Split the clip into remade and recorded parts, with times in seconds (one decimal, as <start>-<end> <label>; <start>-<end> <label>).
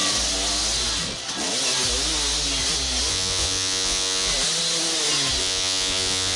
0.0-3.1 recorded; 3.1-4.3 remade; 4.3-5.4 recorded; 5.4-6.4 remade